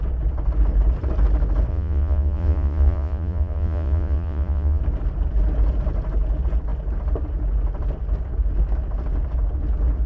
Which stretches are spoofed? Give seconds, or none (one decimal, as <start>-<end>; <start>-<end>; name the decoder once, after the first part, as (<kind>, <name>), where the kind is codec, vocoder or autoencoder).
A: 1.7-4.8 (vocoder, Vocos)